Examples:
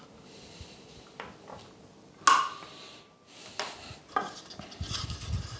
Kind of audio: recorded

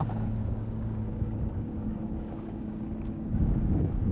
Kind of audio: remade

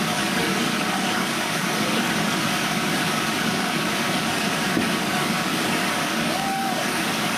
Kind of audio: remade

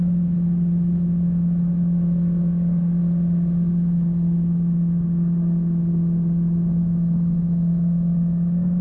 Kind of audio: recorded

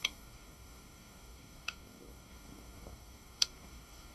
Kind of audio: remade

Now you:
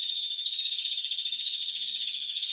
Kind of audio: remade